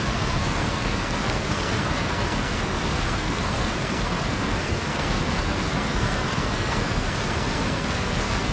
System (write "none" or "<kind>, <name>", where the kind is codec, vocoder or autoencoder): codec, SNAC